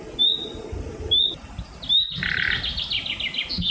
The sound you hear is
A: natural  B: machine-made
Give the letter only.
A